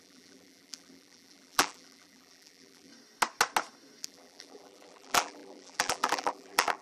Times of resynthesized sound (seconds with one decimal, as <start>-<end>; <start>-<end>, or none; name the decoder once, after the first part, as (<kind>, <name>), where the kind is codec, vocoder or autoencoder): 0.0-2.9 (vocoder, BigVGAN v2); 4.0-6.8